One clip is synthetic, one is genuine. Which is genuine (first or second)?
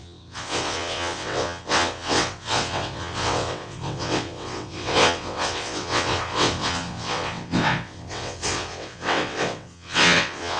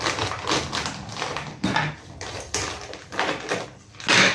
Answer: second